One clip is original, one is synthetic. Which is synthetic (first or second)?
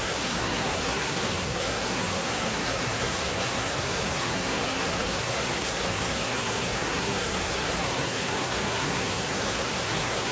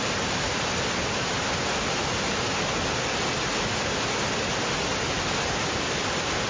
first